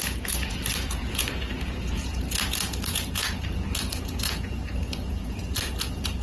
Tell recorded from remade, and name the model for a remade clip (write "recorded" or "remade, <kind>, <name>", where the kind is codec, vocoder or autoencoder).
remade, vocoder, Vocos